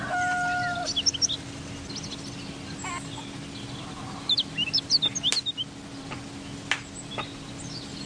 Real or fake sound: real